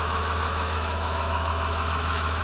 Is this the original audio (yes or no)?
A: no